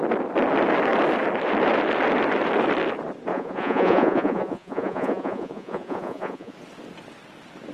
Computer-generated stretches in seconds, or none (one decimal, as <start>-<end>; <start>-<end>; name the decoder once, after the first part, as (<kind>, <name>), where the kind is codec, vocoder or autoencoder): 3.3-6.5 (vocoder, Vocos)